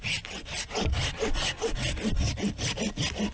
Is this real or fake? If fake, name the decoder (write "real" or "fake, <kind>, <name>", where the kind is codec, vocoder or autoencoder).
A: real